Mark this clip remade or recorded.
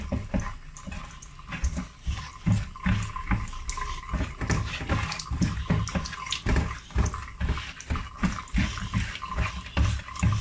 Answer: recorded